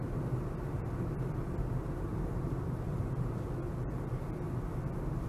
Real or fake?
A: real